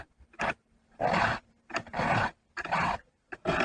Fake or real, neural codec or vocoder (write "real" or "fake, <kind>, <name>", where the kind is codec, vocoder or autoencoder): fake, vocoder, BigVGAN v2